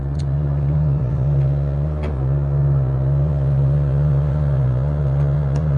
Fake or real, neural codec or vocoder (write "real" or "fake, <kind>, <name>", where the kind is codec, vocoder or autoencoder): fake, vocoder, Vocos